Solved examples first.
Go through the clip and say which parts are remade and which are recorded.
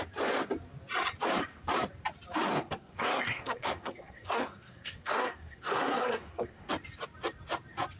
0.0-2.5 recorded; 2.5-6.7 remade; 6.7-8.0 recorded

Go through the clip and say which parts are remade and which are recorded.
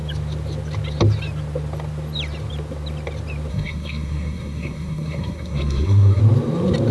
0.0-3.5 recorded; 3.5-6.2 remade; 6.2-6.9 recorded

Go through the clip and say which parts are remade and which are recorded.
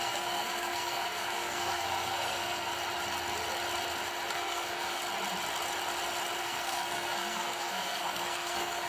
0.0-2.7 remade; 2.7-4.3 recorded; 4.3-5.0 remade; 5.0-6.4 recorded; 6.4-8.9 remade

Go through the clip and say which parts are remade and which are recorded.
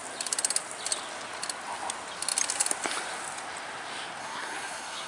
0.0-4.2 recorded; 4.2-5.1 remade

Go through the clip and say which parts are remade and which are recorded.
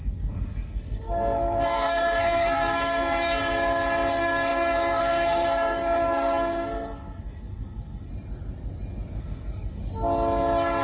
0.0-3.4 remade; 3.4-4.1 recorded; 4.1-8.1 remade; 8.1-9.2 recorded; 9.2-9.8 remade; 9.8-10.8 recorded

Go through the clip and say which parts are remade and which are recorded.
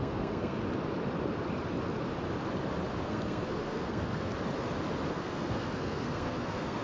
0.0-0.6 remade; 0.6-3.0 recorded; 3.0-4.3 remade; 4.3-5.1 recorded; 5.1-6.8 remade